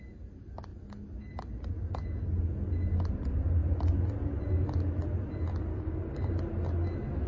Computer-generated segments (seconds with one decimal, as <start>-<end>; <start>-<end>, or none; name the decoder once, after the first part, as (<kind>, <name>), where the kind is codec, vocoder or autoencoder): 5.7-6.3 (codec, DAC)

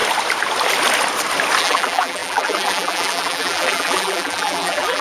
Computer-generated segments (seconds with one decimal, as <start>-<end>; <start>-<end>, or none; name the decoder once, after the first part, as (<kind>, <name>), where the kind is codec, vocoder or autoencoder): 1.6-5.0 (vocoder, BigVGAN v2)

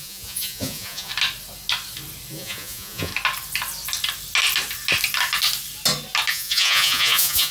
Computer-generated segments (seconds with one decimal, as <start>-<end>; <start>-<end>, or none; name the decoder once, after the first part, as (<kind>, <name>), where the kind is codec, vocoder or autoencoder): 0.0-1.1 (vocoder, Vocos); 2.3-3.1; 6.3-7.5

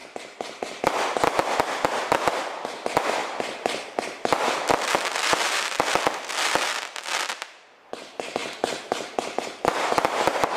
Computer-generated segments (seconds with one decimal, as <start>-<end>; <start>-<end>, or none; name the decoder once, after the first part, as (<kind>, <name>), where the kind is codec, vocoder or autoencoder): 0.0-2.3 (vocoder, BigVGAN v2); 3.2-7.1

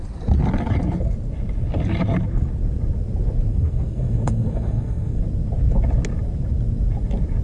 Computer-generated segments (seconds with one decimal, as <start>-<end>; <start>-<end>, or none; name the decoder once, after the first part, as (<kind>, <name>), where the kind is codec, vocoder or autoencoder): 3.5-5.2 (codec, SNAC)

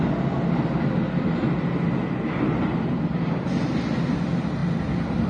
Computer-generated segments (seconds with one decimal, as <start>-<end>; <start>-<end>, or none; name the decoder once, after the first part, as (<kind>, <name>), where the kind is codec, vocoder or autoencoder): none